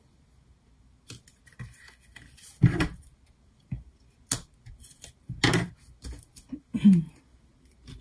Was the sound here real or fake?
real